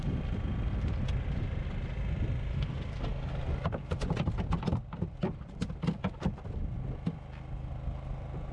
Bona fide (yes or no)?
yes